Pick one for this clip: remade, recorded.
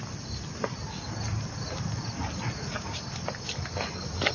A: recorded